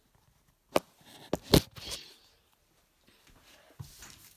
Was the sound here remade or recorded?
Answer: recorded